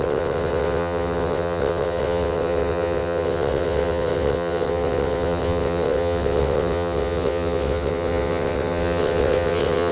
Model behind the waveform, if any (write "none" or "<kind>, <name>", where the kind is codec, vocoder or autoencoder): vocoder, WaveNeXt